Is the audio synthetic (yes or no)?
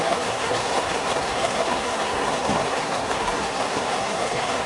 yes